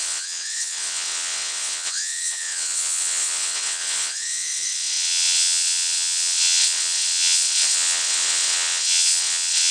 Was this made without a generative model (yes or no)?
no